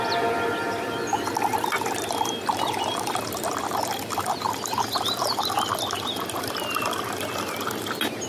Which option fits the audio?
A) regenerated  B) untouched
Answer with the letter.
B